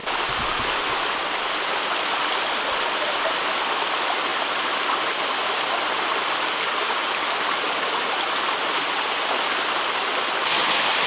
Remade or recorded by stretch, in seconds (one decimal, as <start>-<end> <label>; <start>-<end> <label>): 0.0-11.1 recorded